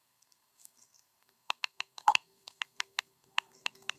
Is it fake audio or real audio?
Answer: fake